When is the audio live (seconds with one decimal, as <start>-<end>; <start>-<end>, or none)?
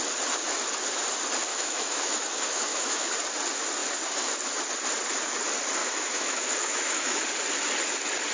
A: 0.0-1.5; 3.1-5.8; 7.2-8.3